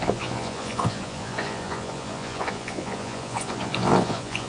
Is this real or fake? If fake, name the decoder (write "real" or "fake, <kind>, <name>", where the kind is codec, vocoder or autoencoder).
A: fake, vocoder, Vocos